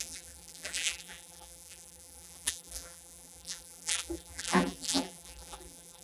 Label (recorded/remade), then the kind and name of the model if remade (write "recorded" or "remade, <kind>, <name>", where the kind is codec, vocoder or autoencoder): remade, vocoder, BigVGAN v2